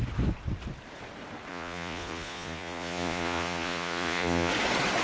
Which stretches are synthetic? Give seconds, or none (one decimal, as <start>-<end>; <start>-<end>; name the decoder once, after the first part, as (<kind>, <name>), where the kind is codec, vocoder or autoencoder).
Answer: 1.5-4.5 (vocoder, Vocos)